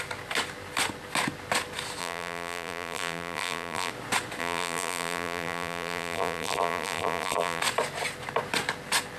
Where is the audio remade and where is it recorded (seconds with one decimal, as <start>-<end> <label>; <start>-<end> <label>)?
0.0-2.0 recorded; 2.0-3.9 remade; 3.9-4.4 recorded; 4.4-7.6 remade; 7.6-9.2 recorded

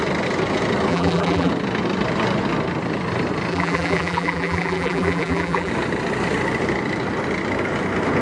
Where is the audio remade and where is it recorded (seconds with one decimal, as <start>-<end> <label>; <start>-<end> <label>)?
0.0-0.9 recorded; 0.9-1.5 remade; 1.5-3.5 recorded; 3.5-5.7 remade; 5.7-8.2 recorded

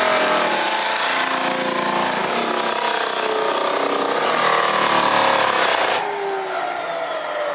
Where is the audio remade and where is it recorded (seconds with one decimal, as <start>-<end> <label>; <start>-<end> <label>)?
0.0-7.5 recorded

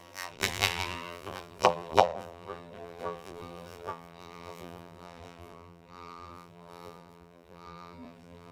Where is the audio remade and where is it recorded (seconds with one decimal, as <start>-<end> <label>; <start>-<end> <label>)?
0.0-8.5 remade

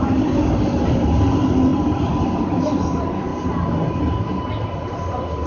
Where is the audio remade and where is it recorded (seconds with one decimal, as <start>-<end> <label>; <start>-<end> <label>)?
0.0-1.7 recorded; 1.7-2.2 remade; 2.2-5.5 recorded

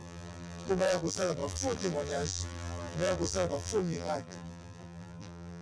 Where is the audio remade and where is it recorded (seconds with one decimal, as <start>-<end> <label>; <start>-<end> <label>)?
0.0-5.6 remade